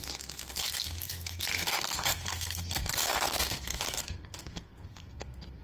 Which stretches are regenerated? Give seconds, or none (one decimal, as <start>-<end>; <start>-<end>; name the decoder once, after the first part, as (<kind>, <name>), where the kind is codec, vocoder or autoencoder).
0.0-5.6 (codec, SNAC)